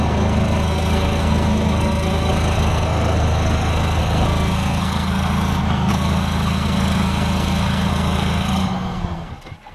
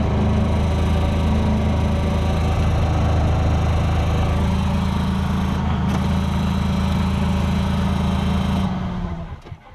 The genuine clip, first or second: second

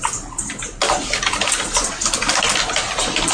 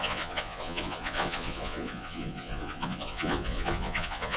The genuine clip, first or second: first